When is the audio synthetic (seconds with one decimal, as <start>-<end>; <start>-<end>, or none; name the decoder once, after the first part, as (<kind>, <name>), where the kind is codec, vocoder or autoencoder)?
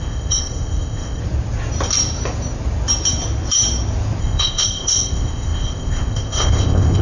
0.0-1.2 (codec, ZipCodec); 4.2-7.0